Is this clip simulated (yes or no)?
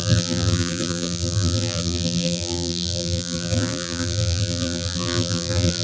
yes